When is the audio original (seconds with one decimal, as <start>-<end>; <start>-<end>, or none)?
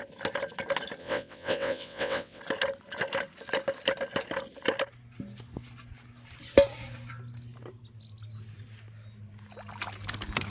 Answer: 0.0-1.0; 2.4-10.5